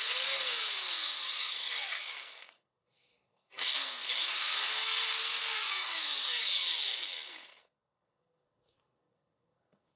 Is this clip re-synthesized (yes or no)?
yes